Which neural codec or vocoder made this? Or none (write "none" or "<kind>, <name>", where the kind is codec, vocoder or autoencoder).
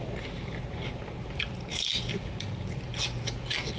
none